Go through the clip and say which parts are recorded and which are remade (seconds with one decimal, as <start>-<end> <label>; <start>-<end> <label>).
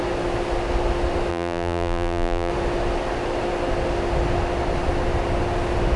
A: 0.0-1.3 recorded; 1.3-2.5 remade; 2.5-6.0 recorded